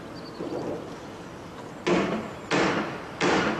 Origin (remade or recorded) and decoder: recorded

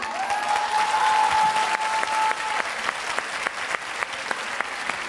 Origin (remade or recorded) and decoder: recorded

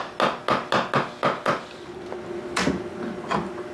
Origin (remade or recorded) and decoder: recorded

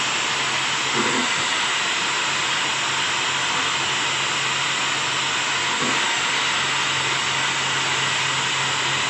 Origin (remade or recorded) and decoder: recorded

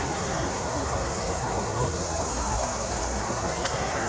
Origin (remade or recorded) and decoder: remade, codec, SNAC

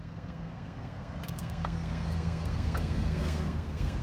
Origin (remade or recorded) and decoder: remade, codec, SNAC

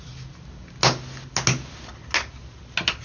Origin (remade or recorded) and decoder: recorded